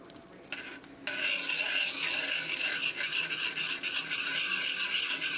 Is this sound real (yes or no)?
yes